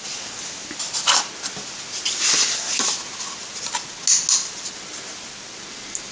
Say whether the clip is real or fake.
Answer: real